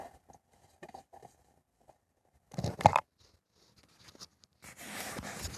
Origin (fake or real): real